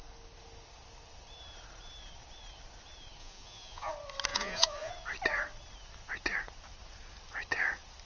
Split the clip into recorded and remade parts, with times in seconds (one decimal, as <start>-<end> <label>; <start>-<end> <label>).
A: 0.0-3.2 recorded; 3.2-3.9 remade; 3.9-4.3 recorded; 4.3-4.9 remade; 4.9-8.1 recorded